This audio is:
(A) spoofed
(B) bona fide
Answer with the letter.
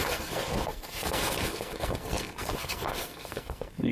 A